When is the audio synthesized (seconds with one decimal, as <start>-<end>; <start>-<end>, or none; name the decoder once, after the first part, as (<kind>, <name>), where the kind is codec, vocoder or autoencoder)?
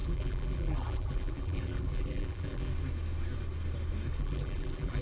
0.0-2.7 (vocoder, BigVGAN v2); 4.2-5.0